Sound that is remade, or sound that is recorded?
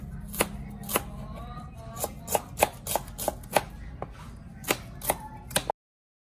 recorded